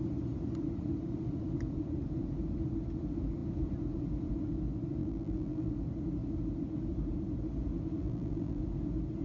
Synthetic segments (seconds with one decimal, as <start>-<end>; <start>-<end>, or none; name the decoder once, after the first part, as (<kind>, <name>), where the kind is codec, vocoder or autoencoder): 5.0-5.7 (vocoder, BigVGAN v2); 8.0-8.6